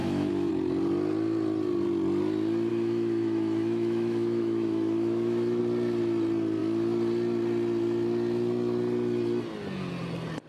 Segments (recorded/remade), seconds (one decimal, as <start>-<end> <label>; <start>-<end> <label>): 0.0-0.5 remade; 0.5-2.7 recorded; 2.7-5.6 remade; 5.6-10.5 recorded

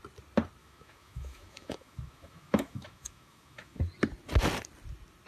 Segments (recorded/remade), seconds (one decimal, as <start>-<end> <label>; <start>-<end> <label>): 0.0-0.6 recorded; 0.6-3.8 remade; 3.8-5.3 recorded